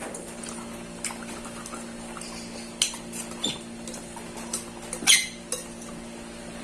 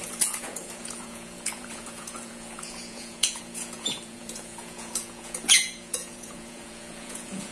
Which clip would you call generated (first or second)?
second